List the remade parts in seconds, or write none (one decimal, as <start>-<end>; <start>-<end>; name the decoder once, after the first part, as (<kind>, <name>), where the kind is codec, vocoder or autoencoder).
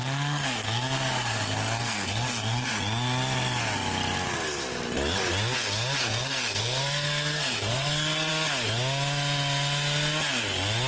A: 0.0-2.7 (codec, SNAC); 6.0-8.3